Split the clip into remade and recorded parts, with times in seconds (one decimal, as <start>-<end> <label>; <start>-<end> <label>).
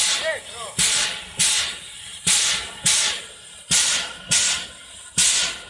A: 0.0-2.1 recorded; 2.1-2.8 remade; 2.8-5.7 recorded